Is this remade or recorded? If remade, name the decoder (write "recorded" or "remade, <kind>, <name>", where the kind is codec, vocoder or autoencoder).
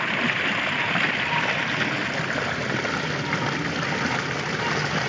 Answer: recorded